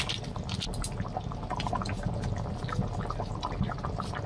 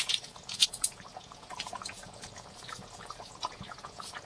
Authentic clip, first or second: first